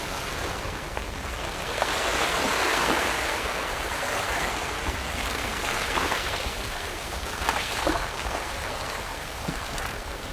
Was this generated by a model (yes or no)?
yes